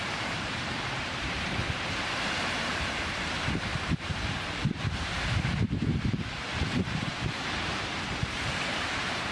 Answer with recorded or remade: remade